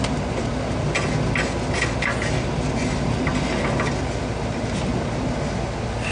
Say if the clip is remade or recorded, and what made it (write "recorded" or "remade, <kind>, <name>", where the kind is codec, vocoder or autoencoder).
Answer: recorded